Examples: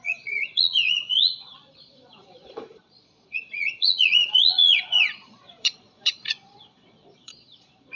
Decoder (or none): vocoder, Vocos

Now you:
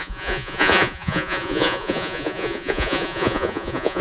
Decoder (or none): vocoder, Vocos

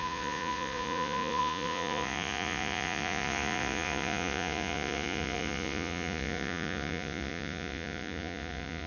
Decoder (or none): vocoder, Vocos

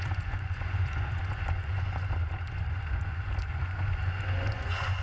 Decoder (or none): vocoder, Vocos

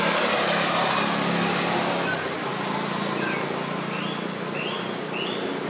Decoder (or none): none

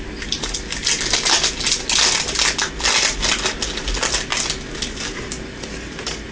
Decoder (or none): none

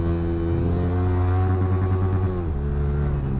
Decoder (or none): none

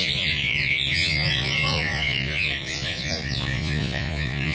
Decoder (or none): vocoder, Vocos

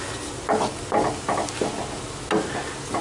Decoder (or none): none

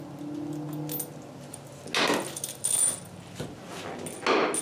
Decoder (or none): none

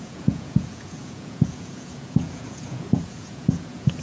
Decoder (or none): vocoder, Vocos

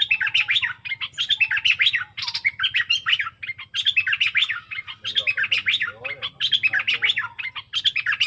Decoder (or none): none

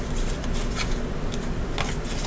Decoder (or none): none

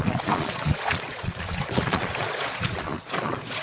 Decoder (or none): vocoder, Vocos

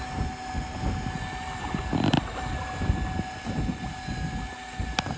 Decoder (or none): none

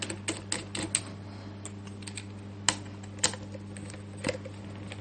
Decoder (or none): none